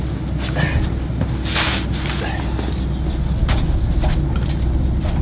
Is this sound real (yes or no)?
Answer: yes